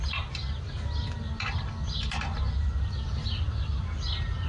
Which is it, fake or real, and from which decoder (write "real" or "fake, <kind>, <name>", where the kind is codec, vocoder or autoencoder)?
real